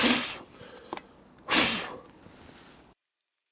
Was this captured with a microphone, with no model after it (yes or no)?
yes